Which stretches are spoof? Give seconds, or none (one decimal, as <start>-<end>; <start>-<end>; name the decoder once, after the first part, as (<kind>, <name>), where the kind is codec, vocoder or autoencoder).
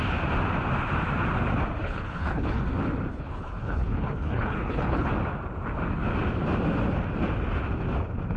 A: 1.8-2.6 (codec, HILCodec); 3.1-5.1